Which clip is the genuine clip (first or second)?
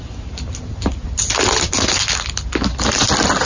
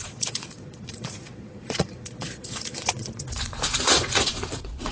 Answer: first